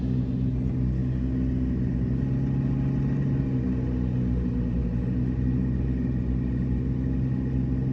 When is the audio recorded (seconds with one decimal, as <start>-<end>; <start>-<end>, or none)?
0.0-7.9